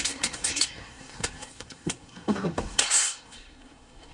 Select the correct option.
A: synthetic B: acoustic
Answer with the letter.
A